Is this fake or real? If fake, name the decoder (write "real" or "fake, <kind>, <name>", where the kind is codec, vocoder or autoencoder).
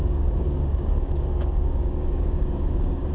fake, codec, DAC